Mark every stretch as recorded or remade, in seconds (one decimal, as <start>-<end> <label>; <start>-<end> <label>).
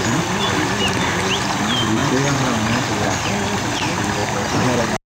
0.0-5.2 recorded